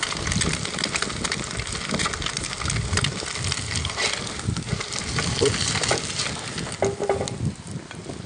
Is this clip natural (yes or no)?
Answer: yes